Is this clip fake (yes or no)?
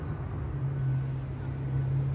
no